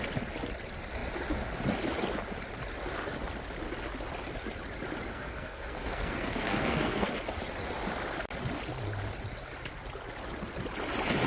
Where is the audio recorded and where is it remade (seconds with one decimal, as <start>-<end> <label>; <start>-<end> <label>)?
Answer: 0.0-5.1 recorded; 5.1-7.1 remade; 7.1-11.3 recorded

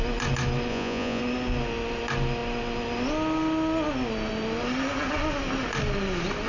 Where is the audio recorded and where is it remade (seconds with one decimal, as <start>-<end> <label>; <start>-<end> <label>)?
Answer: 0.0-0.7 recorded; 0.7-1.2 remade; 1.2-6.5 recorded

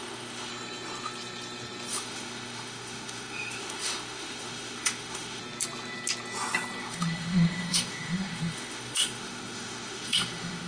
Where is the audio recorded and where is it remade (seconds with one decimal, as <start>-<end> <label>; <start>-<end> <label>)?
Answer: 0.0-0.5 remade; 0.5-1.9 recorded; 1.9-5.4 remade; 5.4-6.8 recorded; 6.8-10.7 remade

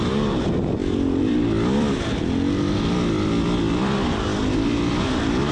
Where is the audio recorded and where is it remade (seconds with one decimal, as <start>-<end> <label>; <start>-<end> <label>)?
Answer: 0.0-0.8 recorded; 0.8-2.2 remade; 2.2-5.5 recorded

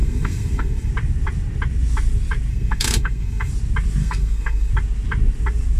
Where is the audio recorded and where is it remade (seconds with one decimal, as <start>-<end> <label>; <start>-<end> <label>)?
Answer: 0.0-0.9 remade; 0.9-2.5 recorded; 2.5-3.5 remade; 3.5-4.0 recorded; 4.0-4.7 remade; 4.7-5.8 recorded

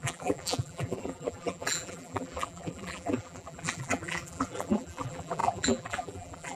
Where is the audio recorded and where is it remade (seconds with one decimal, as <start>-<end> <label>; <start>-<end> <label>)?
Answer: 0.0-6.6 remade

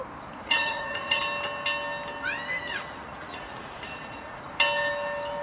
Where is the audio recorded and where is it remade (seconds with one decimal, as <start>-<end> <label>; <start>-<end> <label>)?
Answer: 0.0-0.4 recorded; 0.4-1.2 remade; 1.2-2.7 recorded; 2.7-4.5 remade; 4.5-5.4 recorded